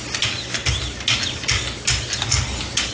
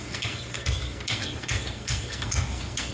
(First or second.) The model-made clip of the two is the second